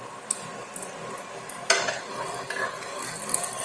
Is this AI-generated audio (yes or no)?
no